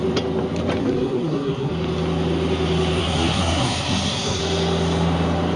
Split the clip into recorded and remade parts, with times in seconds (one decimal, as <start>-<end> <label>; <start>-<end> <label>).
0.0-0.8 recorded; 0.8-1.7 remade; 1.7-3.0 recorded; 3.0-4.4 remade; 4.4-5.6 recorded